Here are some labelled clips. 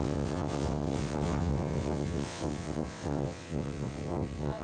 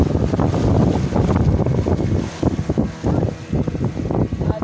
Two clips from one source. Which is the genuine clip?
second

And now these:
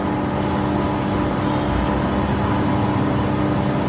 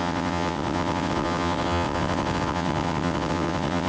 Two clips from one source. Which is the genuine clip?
first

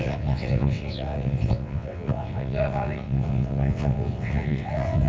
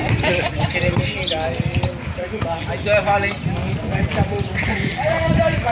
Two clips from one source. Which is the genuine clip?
second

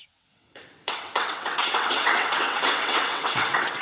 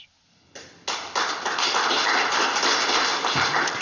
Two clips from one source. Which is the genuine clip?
second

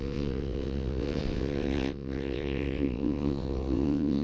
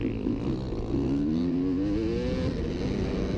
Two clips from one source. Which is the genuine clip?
second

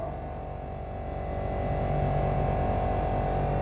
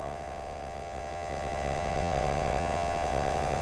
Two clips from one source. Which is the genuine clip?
first